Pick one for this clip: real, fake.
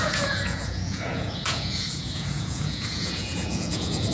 fake